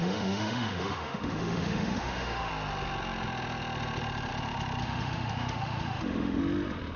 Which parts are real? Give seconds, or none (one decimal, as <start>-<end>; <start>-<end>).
2.5-4.8; 6.4-7.0